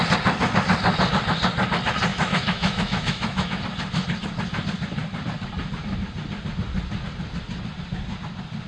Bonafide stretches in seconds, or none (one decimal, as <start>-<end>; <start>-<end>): 0.0-2.1; 3.6-8.7